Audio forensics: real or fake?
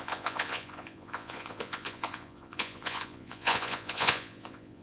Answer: fake